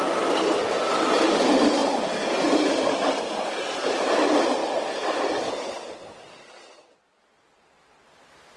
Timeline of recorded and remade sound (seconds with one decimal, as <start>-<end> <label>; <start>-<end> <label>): 0.0-8.6 recorded